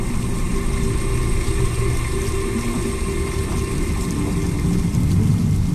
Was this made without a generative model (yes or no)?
yes